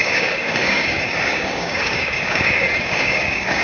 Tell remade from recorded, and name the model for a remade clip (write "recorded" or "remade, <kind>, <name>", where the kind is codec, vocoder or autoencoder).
remade, codec, DAC